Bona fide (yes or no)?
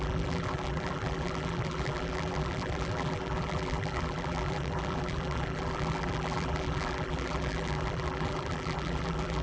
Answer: no